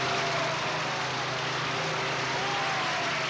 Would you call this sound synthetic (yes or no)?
no